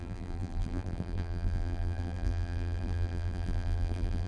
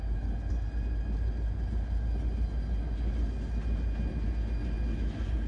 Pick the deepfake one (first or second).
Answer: first